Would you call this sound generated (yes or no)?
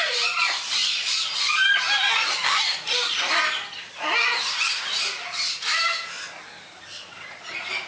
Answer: no